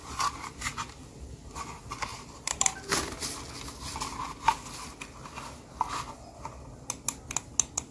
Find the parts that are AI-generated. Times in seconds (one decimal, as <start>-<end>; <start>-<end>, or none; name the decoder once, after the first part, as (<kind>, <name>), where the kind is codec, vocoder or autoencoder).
2.1-3.3 (vocoder, BigVGAN v2); 4.1-5.6